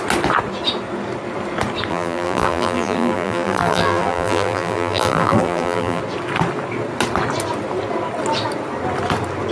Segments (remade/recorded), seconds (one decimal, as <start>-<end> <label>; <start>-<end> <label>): 0.0-1.9 recorded; 1.9-6.0 remade; 6.0-9.5 recorded